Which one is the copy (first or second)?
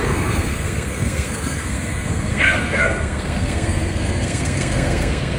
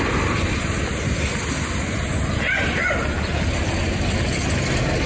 first